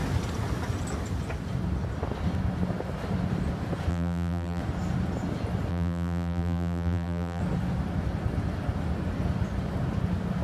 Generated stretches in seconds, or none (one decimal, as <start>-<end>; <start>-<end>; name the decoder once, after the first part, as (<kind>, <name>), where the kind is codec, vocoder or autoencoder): 3.9-4.6 (vocoder, BigVGAN v2); 5.7-7.4